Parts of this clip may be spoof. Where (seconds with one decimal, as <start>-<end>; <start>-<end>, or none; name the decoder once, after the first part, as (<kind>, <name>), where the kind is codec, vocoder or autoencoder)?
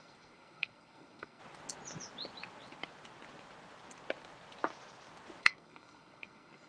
0.0-1.4 (codec, SNAC); 5.4-6.7